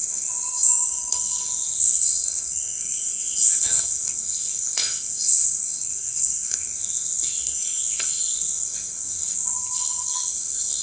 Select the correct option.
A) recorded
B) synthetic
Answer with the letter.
B